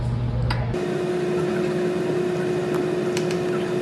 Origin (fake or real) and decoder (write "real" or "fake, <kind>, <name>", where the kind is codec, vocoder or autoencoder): real